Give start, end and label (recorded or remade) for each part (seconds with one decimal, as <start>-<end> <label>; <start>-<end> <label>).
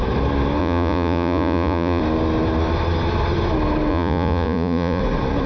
0.0-0.6 recorded; 0.6-2.0 remade; 2.0-3.9 recorded; 3.9-5.0 remade; 5.0-5.5 recorded